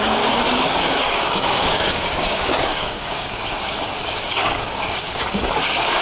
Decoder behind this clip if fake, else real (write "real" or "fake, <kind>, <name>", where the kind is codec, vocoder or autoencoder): fake, codec, DAC